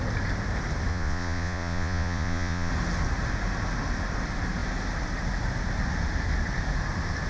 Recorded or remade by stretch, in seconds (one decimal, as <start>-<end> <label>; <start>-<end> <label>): 0.0-0.9 recorded; 0.9-2.7 remade; 2.7-7.3 recorded